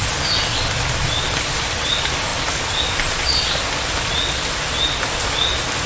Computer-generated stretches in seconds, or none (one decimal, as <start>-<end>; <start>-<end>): none